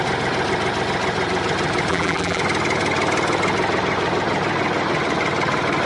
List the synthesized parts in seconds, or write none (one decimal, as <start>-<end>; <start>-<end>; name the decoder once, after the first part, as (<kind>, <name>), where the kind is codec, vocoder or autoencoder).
1.9-2.4 (vocoder, BigVGAN v2)